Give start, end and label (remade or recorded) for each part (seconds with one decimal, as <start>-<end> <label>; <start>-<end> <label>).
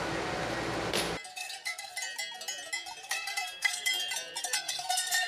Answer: 0.0-1.3 recorded; 1.3-1.9 remade; 1.9-3.0 recorded; 3.0-3.9 remade; 3.9-4.4 recorded; 4.4-5.3 remade